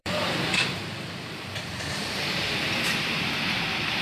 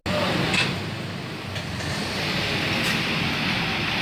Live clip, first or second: second